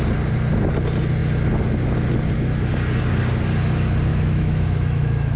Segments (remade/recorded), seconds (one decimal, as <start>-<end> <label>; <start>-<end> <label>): 0.0-4.1 recorded; 4.1-5.4 remade